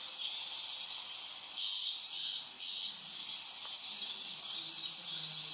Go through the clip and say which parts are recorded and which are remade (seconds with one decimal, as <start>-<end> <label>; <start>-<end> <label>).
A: 0.0-5.5 recorded